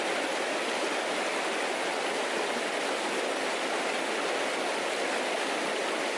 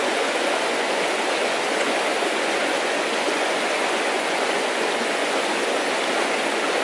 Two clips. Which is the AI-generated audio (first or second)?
second